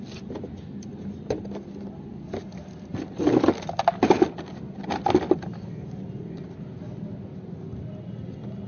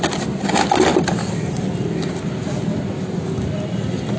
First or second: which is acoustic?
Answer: first